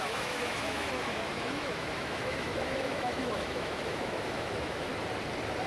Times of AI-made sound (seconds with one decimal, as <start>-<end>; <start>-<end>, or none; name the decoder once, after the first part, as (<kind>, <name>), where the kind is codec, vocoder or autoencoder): 0.0-4.9 (autoencoder, DAC-VAE)